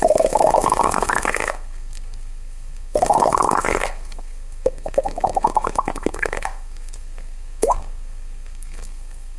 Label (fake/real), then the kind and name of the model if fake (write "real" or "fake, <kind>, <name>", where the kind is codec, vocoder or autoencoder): fake, codec, SNAC